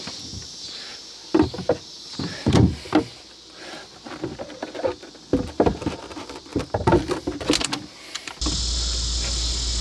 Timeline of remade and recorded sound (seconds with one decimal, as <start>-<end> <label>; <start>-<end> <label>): 0.0-9.8 recorded